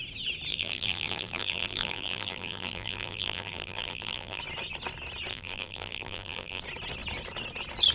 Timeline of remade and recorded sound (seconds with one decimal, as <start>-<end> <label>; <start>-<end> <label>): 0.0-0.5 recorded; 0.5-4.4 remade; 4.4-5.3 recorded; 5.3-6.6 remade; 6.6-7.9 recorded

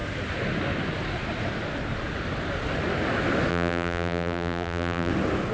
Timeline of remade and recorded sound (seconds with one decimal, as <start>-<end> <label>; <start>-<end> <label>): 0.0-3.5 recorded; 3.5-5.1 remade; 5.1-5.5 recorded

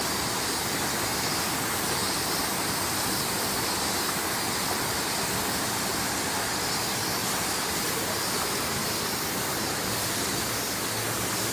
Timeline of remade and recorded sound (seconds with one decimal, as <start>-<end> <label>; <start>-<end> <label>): 0.0-2.0 recorded; 2.0-3.9 remade; 3.9-7.2 recorded; 7.2-8.3 remade; 8.3-8.8 recorded; 8.8-9.3 remade; 9.3-11.5 recorded

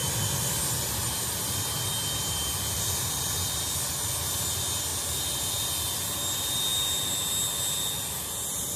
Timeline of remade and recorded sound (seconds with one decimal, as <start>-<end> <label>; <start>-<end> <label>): 0.0-0.6 remade; 0.6-8.8 recorded

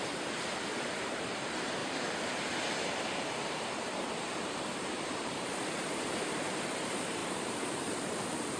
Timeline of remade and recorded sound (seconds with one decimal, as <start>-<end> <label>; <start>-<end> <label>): 0.0-1.8 remade; 1.8-2.8 recorded; 2.8-8.6 remade